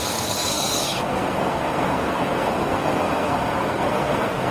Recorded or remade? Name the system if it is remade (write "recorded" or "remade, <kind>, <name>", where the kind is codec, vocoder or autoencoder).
remade, codec, SNAC